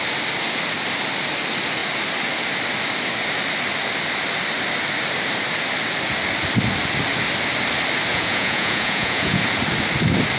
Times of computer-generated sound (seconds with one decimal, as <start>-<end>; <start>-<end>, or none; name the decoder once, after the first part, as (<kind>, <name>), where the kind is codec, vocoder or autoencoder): 8.1-9.4 (vocoder, Vocos)